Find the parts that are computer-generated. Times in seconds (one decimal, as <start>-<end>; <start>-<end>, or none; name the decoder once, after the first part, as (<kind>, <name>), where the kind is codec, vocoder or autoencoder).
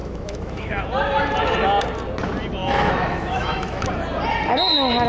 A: 0.0-0.8 (autoencoder, DAC-VAE); 2.6-3.9